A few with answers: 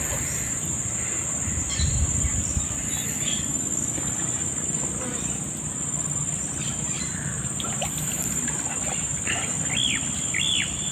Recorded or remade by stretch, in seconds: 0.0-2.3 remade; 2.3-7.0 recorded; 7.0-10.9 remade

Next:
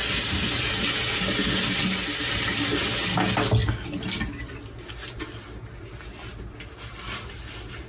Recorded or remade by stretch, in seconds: 0.0-1.4 remade; 1.4-7.9 recorded